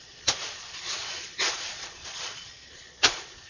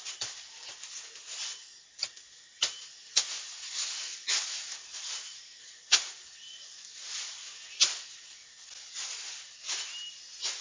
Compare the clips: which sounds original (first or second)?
second